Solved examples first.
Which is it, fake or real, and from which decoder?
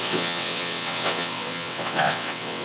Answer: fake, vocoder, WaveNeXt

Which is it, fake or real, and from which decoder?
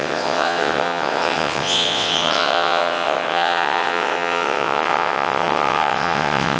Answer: fake, vocoder, WaveNeXt